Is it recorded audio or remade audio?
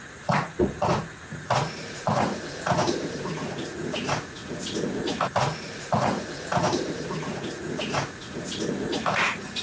remade